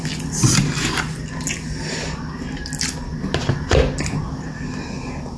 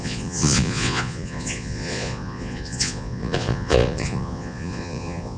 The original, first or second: first